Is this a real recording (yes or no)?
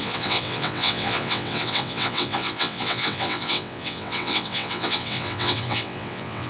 no